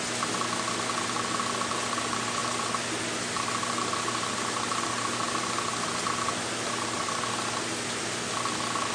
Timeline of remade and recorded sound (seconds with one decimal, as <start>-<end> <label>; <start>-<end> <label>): 0.0-8.9 recorded